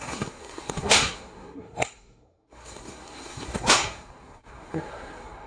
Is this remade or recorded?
remade